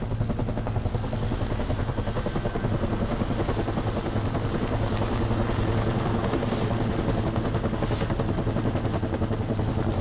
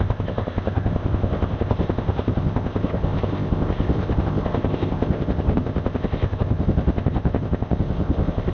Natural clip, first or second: first